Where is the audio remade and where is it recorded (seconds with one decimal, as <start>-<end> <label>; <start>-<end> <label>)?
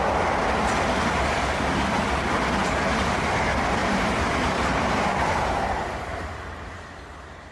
0.0-3.8 recorded; 3.8-6.8 remade; 6.8-7.5 recorded